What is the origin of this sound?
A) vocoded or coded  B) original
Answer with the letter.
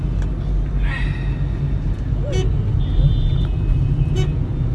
B